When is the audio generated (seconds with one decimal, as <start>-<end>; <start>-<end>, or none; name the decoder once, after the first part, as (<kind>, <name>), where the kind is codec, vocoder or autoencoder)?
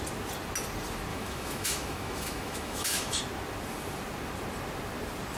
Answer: 1.1-3.2 (autoencoder, DAC-VAE)